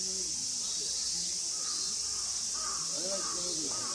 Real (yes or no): yes